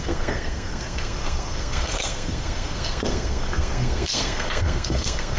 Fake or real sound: fake